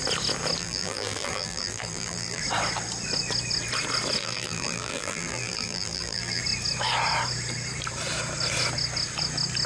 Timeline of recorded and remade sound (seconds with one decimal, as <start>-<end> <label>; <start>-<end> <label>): 0.0-0.6 recorded; 0.6-2.4 remade; 2.4-4.2 recorded; 4.2-6.4 remade; 6.4-9.7 recorded